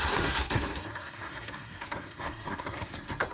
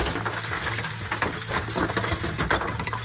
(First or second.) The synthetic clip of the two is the first